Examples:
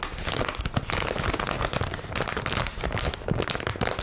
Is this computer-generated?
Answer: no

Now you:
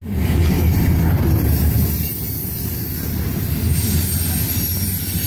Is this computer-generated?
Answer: no